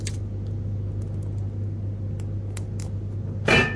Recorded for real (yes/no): yes